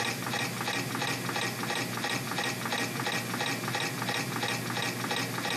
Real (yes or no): yes